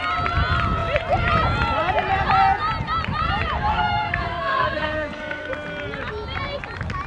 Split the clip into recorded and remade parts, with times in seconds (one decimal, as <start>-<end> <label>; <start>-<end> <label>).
0.0-3.7 recorded; 3.7-5.5 remade; 5.5-7.1 recorded